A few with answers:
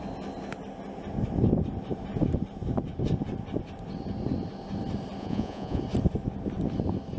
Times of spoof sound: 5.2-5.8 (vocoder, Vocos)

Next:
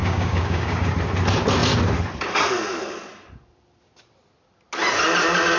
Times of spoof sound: 0.0-0.9 (codec, DAC)

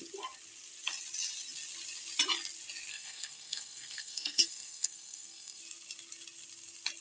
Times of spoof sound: 2.9-5.6 (codec, SNAC)